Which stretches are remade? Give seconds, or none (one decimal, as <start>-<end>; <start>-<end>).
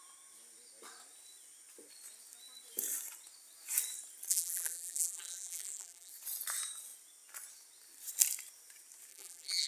4.3-6.1; 9.1-9.7